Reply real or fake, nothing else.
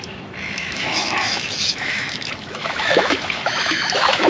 fake